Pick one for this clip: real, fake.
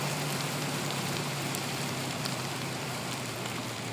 fake